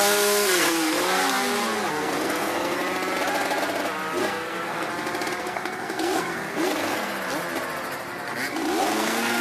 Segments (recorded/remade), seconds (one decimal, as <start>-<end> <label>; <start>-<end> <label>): 0.0-1.2 remade; 1.2-1.9 recorded; 1.9-2.8 remade; 2.8-4.2 recorded; 4.2-4.9 remade; 4.9-5.4 recorded; 5.4-7.1 remade; 7.1-8.8 recorded; 8.8-9.4 remade